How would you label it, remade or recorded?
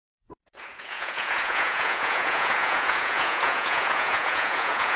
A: remade